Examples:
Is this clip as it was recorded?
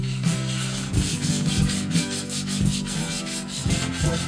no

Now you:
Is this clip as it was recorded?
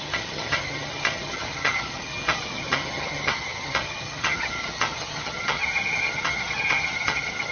no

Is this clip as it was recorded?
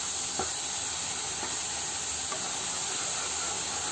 yes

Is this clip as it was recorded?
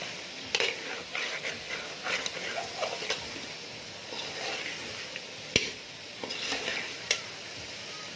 yes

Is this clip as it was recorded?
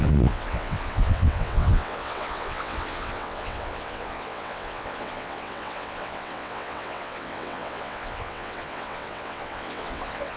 no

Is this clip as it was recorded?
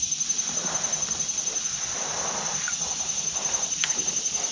yes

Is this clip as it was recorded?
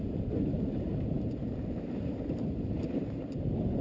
no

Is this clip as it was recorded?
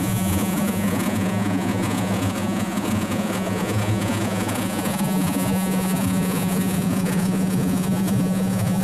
no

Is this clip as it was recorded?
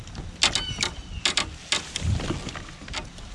yes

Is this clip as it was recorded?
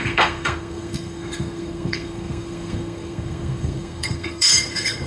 no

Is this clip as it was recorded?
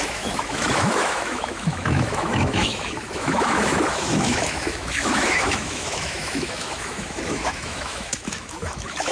no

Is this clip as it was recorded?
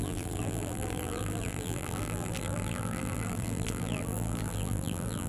no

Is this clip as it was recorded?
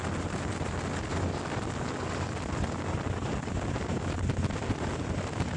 yes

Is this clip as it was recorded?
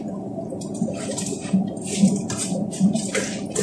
no